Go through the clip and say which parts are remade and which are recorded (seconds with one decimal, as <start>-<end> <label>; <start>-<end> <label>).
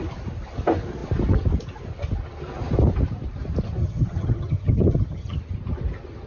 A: 0.0-3.8 recorded; 3.8-5.4 remade; 5.4-6.3 recorded